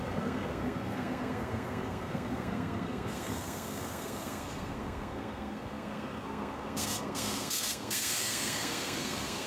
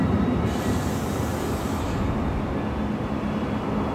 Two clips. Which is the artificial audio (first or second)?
first